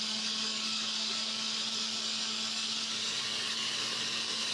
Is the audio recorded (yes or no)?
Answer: no